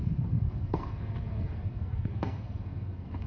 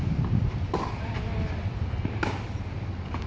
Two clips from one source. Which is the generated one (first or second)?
first